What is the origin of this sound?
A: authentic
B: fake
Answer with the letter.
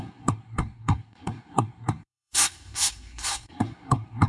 B